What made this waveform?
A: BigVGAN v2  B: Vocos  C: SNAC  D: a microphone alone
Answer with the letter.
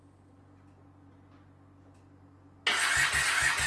D